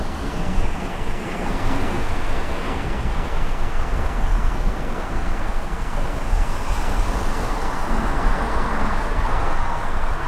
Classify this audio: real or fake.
fake